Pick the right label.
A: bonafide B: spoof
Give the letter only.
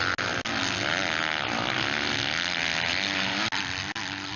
A